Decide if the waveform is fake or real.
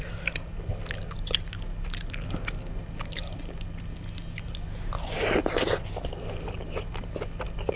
real